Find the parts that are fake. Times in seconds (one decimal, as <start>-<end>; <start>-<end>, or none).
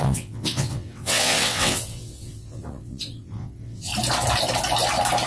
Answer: 0.0-3.9